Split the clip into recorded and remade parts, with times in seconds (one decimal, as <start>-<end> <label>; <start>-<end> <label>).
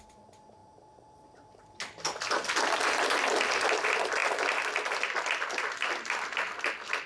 0.0-7.1 recorded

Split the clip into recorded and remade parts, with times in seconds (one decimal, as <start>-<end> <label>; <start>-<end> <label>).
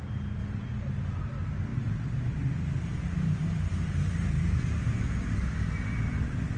0.0-2.9 recorded; 2.9-6.6 remade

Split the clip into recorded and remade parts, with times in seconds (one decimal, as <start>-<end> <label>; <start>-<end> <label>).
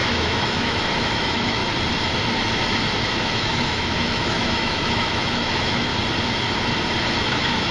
0.0-1.6 remade; 1.6-3.2 recorded; 3.2-5.9 remade; 5.9-7.2 recorded; 7.2-7.7 remade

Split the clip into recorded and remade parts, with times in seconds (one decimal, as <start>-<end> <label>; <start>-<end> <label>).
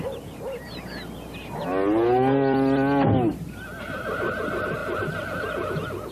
0.0-6.1 recorded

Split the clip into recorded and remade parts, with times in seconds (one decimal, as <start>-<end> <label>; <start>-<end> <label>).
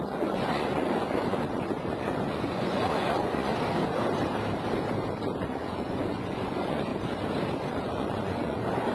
0.0-3.5 remade; 3.5-5.4 recorded; 5.4-6.9 remade; 6.9-7.7 recorded; 7.7-8.9 remade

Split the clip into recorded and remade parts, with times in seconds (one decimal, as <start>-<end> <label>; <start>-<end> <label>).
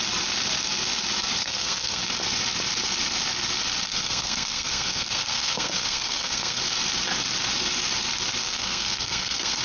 0.0-1.4 recorded; 1.4-2.0 remade; 2.0-3.9 recorded; 3.9-6.6 remade; 6.6-8.4 recorded; 8.4-9.6 remade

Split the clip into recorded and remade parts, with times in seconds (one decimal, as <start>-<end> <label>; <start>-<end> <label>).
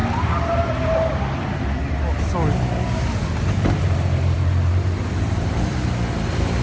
0.0-3.8 recorded; 3.8-6.6 remade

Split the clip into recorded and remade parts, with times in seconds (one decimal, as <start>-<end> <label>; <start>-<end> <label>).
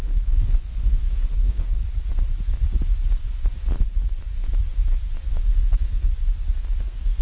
0.0-1.8 remade; 1.8-5.3 recorded; 5.3-6.1 remade; 6.1-6.8 recorded; 6.8-7.2 remade